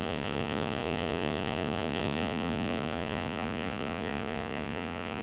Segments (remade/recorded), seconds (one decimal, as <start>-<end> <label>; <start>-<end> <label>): 0.0-5.2 remade